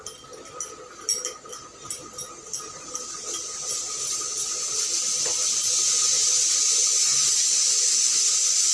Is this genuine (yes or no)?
yes